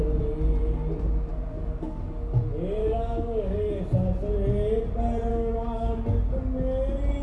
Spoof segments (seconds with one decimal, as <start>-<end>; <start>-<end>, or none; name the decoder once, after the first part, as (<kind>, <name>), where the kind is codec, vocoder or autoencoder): 1.3-2.4 (codec, DAC); 2.8-3.8; 5.3-6.0

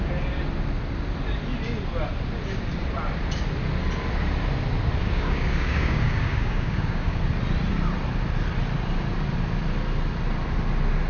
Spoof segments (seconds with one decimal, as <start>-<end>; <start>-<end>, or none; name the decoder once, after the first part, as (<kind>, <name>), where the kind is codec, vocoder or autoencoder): 5.0-7.2 (codec, DAC)

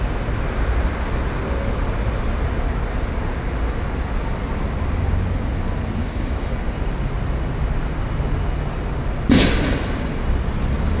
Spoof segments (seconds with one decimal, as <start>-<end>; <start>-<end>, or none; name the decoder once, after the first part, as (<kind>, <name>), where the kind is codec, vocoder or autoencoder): 6.0-6.7 (codec, DAC)

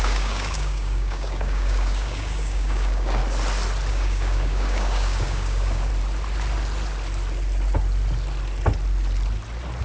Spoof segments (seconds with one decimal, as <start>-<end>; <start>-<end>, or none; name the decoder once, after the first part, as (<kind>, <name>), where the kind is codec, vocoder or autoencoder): 0.0-3.2 (codec, DAC); 3.9-5.9

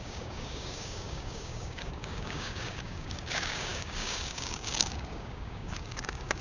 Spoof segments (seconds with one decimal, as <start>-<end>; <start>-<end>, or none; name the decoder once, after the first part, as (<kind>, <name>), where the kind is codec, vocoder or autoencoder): 0.0-6.4 (codec, DAC)

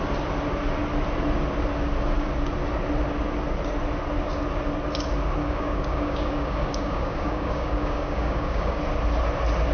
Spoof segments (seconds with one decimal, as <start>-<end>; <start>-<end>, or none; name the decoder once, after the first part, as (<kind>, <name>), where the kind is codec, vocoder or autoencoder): 5.4-8.8 (codec, DAC)

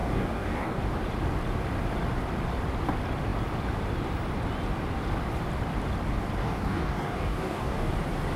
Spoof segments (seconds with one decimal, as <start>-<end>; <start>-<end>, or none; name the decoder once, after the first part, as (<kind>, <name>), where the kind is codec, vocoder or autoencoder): 0.0-0.8 (codec, DAC); 6.4-7.9